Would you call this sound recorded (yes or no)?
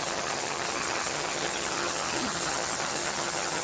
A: no